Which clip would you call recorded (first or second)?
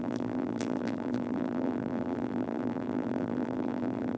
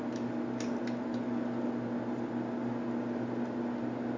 second